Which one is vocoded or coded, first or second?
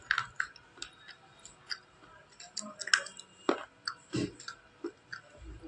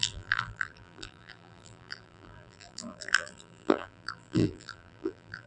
second